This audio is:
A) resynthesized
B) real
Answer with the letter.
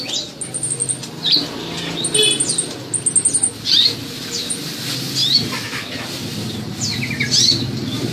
B